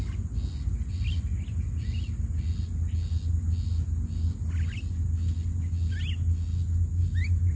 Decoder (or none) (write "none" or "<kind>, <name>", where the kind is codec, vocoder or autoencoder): none